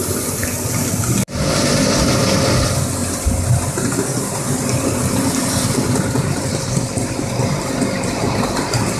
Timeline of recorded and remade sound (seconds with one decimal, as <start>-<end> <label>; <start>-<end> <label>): 0.0-9.0 recorded